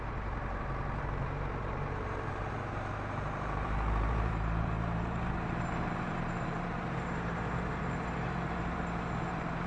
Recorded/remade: remade